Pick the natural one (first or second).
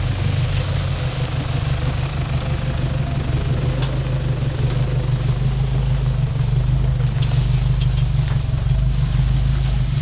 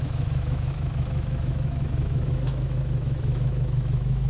first